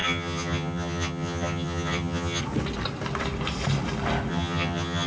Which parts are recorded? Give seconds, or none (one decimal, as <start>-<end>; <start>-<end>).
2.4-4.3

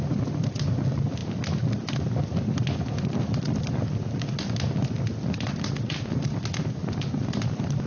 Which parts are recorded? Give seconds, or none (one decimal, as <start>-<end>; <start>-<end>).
0.0-7.9

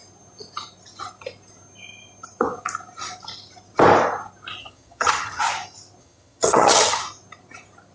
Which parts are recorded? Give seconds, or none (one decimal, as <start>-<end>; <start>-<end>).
0.0-4.6; 5.4-6.0; 7.0-7.9

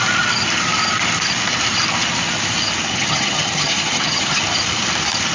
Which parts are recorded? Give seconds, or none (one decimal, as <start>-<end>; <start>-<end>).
0.0-2.9; 4.4-5.3